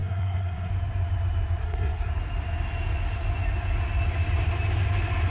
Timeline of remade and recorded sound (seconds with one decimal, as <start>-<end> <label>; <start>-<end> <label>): 0.0-0.7 remade; 0.7-1.6 recorded; 1.6-2.1 remade; 2.1-5.3 recorded